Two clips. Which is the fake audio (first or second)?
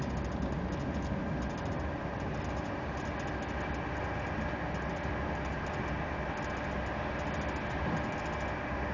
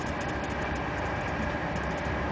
second